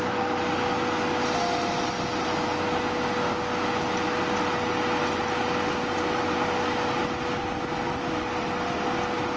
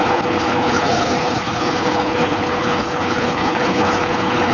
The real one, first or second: first